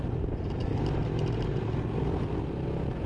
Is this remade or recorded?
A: recorded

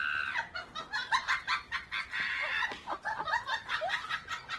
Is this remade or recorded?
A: recorded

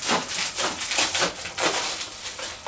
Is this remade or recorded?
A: recorded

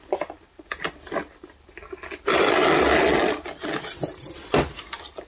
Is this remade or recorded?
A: recorded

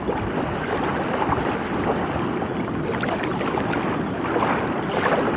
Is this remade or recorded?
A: recorded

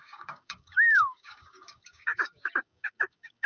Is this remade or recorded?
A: remade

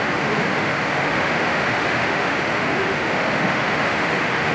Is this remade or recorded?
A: remade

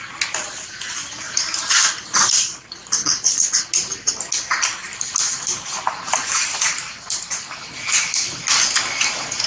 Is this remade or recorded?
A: recorded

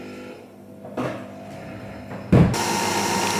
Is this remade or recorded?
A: recorded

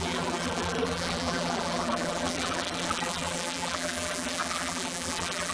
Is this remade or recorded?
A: remade